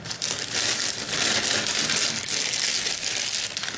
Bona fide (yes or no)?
yes